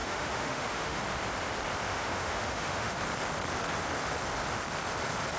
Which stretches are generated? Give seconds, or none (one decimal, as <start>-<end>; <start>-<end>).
0.0-1.0; 1.9-3.0